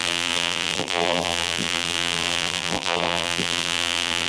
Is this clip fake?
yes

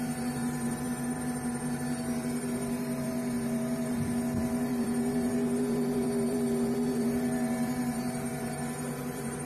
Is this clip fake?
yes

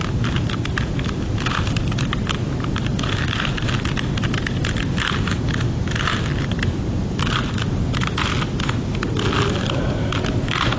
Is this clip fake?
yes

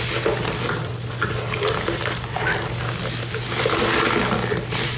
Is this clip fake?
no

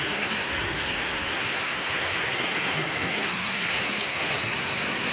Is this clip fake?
yes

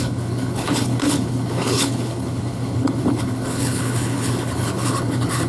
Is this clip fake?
yes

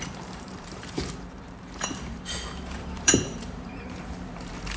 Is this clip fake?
yes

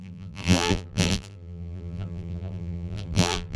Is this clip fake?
yes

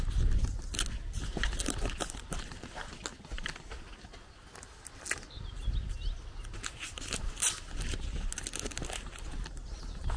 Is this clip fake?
no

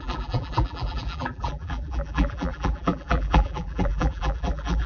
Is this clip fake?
yes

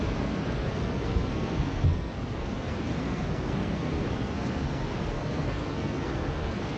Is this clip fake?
yes